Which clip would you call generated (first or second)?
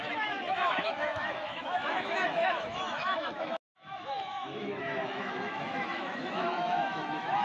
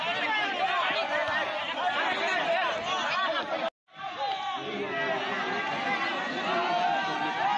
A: first